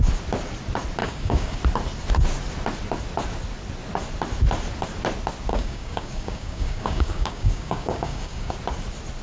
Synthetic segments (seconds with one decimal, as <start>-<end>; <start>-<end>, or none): 1.0-1.6; 5.5-8.5